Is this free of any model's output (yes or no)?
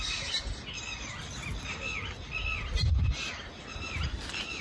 yes